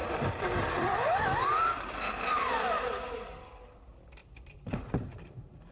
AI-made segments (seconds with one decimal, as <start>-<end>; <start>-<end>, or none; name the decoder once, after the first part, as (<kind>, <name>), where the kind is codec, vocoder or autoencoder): 0.0-3.4 (vocoder, BigVGAN v2); 4.2-5.3